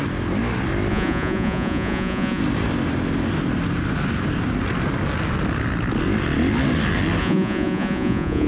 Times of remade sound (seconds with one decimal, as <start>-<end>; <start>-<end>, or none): 0.9-2.4; 7.2-8.5